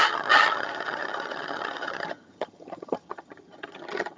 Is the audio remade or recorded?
remade